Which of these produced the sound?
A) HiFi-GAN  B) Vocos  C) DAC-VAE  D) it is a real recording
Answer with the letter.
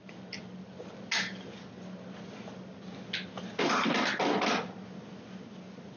D